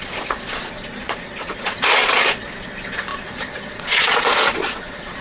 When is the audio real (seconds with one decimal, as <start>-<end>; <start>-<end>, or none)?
none

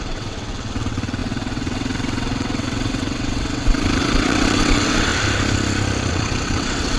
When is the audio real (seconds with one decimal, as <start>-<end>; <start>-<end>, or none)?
5.1-6.1

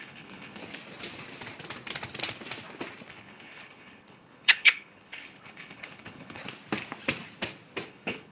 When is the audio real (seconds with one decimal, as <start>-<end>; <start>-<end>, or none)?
0.6-3.1; 6.4-7.9